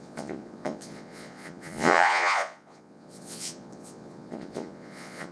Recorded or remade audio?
remade